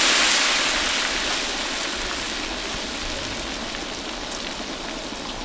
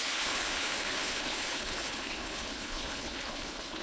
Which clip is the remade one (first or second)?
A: second